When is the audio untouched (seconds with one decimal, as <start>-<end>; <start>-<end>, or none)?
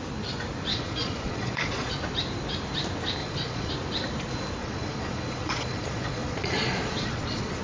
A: 0.0-0.7; 1.9-3.2; 3.7-4.6